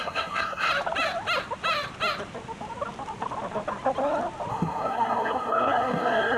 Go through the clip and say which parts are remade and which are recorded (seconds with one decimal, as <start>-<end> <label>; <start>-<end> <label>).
0.0-0.7 remade; 0.7-4.5 recorded; 4.5-6.4 remade